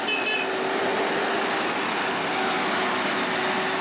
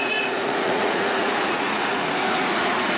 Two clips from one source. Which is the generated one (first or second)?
second